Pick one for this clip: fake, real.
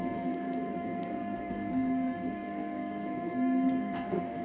fake